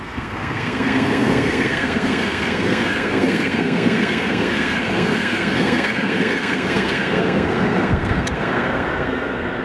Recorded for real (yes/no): no